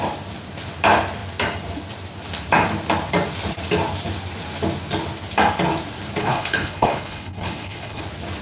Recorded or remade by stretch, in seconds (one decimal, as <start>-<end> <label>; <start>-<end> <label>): 0.0-6.2 recorded; 6.2-8.0 remade; 8.0-8.4 recorded